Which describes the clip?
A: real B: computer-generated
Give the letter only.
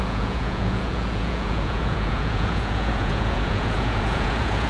B